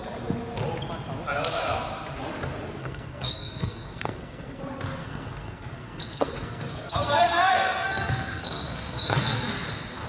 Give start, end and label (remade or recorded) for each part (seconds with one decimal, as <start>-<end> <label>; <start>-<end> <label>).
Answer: 0.0-2.8 recorded; 2.8-4.6 remade; 4.6-5.0 recorded; 5.0-9.5 remade; 9.5-10.1 recorded